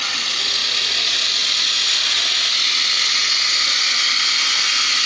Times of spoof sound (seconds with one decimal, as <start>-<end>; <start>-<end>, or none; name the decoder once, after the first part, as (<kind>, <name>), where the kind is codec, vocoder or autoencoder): none